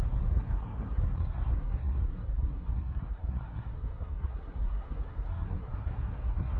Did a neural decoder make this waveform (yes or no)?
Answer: yes